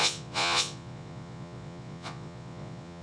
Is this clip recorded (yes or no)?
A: no